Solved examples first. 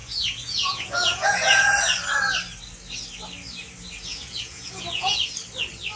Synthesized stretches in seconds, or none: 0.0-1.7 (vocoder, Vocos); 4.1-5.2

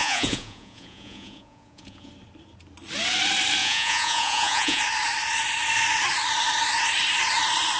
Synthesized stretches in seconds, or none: 0.0-2.1 (vocoder, Vocos); 3.6-4.8

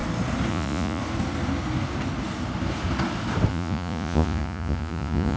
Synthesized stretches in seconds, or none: 0.5-1.0 (vocoder, Vocos); 3.5-5.4

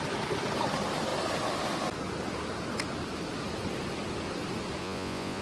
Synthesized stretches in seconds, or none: 4.8-5.4 (vocoder, Vocos)

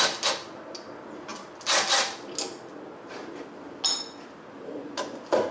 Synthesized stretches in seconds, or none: none

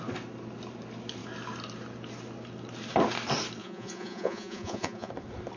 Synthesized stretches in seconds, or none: 3.6-5.1 (vocoder, Vocos)

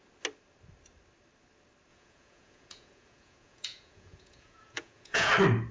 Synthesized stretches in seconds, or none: 1.9-5.3 (vocoder, Vocos)